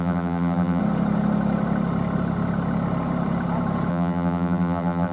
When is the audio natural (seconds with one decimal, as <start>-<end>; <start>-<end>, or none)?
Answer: 0.8-3.9